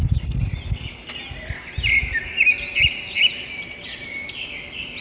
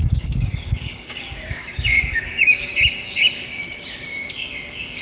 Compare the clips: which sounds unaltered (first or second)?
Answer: first